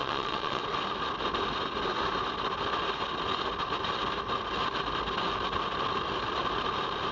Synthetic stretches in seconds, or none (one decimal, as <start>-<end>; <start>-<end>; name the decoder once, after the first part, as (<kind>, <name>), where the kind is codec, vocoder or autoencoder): 0.0-0.6 (vocoder, Vocos)